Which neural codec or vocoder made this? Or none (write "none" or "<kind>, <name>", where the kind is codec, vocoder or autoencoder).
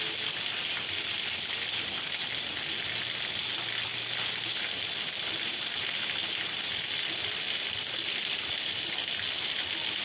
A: none